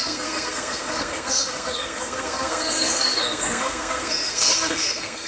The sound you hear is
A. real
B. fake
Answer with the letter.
B